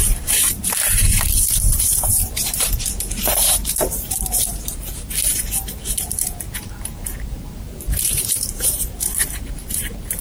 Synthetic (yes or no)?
yes